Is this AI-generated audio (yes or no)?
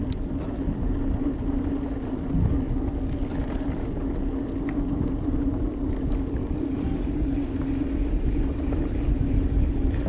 no